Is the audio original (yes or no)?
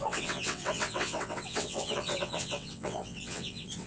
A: no